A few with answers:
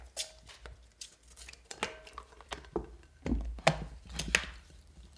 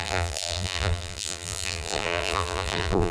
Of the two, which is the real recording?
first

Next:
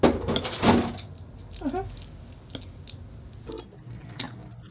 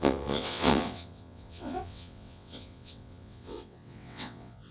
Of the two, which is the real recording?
first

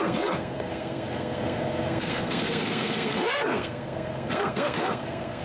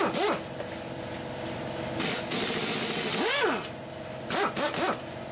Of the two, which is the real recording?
second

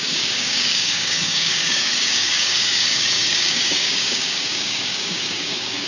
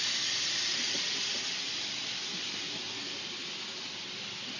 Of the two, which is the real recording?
second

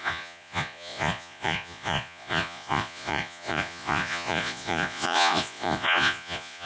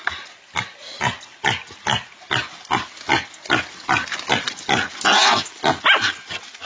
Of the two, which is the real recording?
second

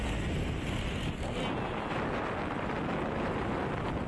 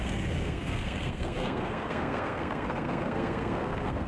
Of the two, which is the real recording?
first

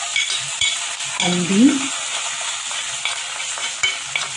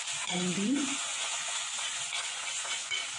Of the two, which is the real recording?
first